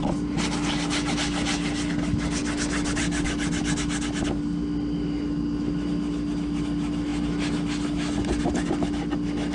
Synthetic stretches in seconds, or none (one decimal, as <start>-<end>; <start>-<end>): none